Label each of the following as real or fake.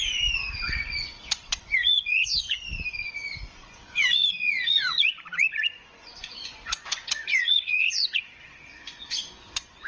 fake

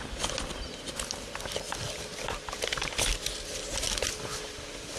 real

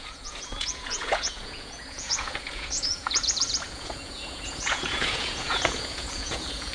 fake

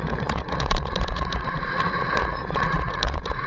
fake